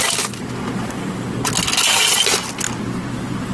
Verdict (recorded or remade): recorded